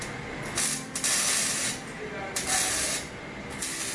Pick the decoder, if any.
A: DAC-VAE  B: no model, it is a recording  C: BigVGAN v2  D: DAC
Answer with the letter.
B